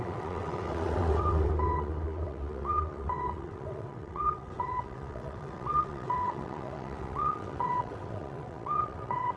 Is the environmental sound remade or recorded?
remade